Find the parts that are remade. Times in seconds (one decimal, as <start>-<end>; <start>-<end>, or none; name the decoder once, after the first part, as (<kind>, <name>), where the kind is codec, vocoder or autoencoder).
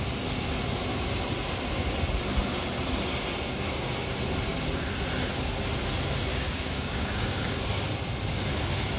6.3-7.6 (codec, DAC)